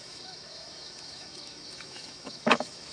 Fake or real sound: fake